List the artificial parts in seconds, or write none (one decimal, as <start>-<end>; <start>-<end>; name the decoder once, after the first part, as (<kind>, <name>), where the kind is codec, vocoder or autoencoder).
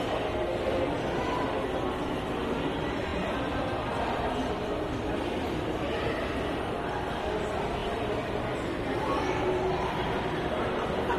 none